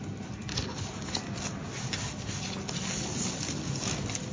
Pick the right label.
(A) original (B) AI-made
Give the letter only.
A